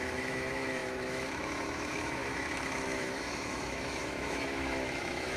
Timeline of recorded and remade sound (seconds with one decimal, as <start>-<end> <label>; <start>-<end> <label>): 0.0-5.4 remade